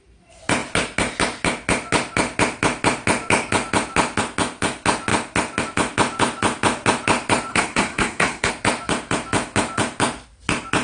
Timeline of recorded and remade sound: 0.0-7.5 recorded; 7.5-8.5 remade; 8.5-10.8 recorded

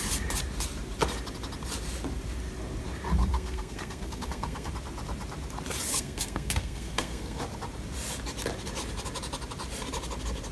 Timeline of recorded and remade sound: 0.0-3.2 recorded; 3.2-4.7 remade; 4.7-5.9 recorded; 5.9-7.4 remade; 7.4-10.5 recorded

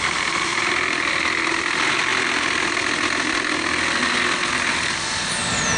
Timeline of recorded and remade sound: 0.0-5.8 recorded